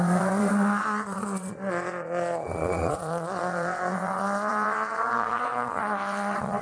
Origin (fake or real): fake